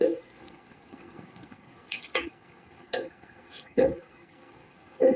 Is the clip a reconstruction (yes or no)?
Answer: yes